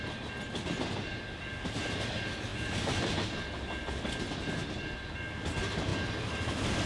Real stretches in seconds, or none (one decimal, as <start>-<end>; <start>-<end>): 0.0-6.9